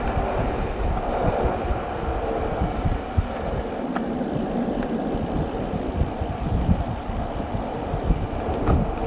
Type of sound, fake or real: real